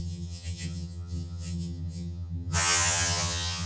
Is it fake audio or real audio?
fake